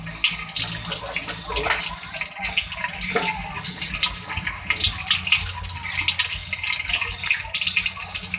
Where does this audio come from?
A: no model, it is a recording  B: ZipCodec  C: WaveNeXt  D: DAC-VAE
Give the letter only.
A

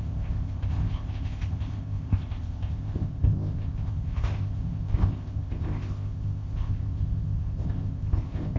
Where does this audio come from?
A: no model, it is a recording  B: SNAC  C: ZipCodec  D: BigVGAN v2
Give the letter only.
C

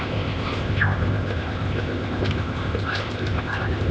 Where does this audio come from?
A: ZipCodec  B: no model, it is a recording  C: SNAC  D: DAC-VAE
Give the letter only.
A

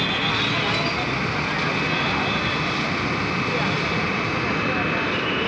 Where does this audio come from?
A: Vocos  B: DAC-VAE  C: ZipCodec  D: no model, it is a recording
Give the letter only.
D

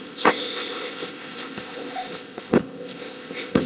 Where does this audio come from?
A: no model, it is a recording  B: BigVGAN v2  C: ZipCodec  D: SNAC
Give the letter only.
C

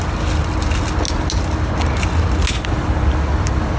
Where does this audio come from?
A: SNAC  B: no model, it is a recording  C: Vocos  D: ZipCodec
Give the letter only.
B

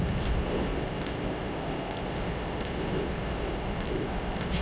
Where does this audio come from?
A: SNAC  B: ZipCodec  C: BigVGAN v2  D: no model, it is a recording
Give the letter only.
B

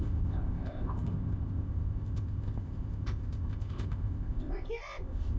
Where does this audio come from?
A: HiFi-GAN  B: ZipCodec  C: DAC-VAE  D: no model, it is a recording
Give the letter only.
B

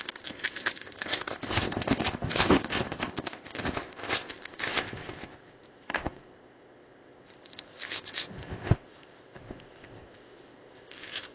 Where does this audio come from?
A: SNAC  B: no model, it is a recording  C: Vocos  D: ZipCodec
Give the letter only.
D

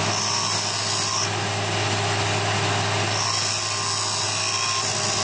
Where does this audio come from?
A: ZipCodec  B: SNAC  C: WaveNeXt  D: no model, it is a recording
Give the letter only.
D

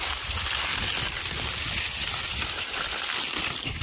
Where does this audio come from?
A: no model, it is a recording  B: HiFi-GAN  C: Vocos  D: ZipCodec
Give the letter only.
A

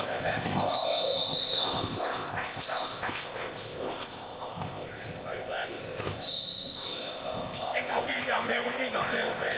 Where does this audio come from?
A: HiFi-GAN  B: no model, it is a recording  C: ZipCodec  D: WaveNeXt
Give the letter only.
C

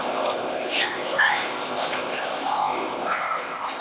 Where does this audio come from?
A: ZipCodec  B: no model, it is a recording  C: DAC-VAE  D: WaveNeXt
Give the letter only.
A